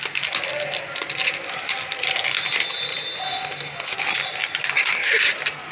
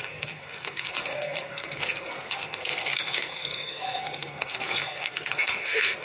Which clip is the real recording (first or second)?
first